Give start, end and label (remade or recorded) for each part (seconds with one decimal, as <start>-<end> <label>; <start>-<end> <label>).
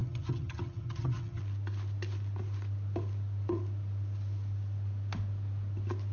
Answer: 0.0-1.4 remade; 1.4-6.1 recorded